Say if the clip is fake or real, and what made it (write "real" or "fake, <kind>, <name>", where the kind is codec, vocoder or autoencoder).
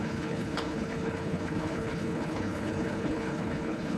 fake, codec, HILCodec